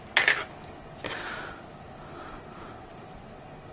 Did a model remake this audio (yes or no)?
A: no